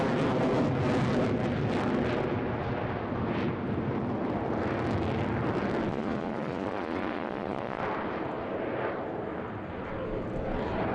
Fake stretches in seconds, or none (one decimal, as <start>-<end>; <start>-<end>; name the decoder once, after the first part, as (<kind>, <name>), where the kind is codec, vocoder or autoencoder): 5.9-7.8 (vocoder, Vocos)